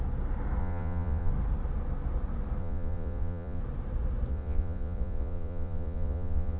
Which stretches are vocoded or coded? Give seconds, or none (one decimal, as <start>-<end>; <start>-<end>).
0.6-1.3; 2.6-3.6; 4.3-6.6